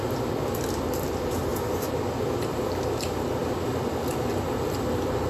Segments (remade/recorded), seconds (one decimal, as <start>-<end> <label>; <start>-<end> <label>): 0.0-1.5 remade; 1.5-2.5 recorded; 2.5-3.4 remade; 3.4-4.1 recorded; 4.1-5.3 remade